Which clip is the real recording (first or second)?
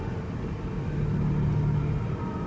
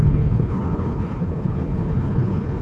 first